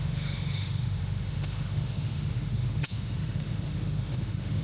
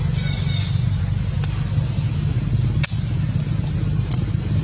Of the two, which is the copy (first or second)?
first